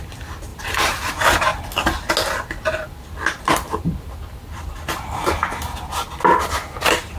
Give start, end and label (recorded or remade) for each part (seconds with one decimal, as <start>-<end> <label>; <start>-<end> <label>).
0.0-0.5 recorded; 0.5-1.1 remade; 1.1-7.2 recorded